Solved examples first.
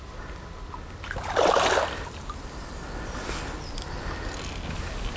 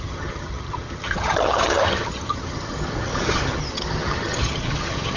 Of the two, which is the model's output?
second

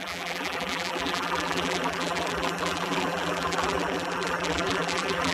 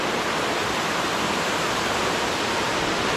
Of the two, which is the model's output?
first